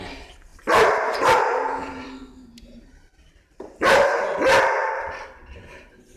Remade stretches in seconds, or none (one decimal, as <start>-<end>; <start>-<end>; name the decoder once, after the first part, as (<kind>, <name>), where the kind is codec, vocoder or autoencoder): 0.5-4.2 (vocoder, BigVGAN v2); 4.8-5.3